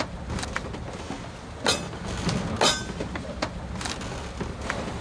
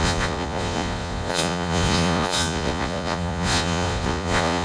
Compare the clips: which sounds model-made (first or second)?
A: second